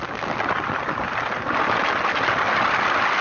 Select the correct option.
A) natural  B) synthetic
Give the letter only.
A